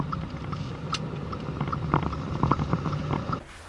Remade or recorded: recorded